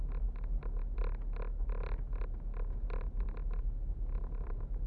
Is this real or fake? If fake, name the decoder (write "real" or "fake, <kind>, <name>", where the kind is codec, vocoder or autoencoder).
real